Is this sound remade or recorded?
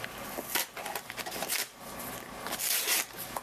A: recorded